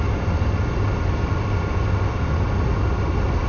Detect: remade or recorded recorded